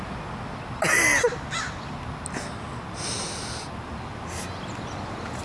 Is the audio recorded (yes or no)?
yes